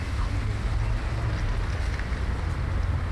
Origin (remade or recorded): recorded